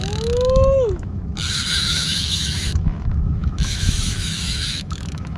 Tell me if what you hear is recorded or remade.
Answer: remade